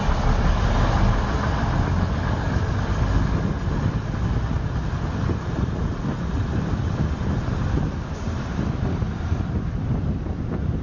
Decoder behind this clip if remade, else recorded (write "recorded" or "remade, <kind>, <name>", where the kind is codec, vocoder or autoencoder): recorded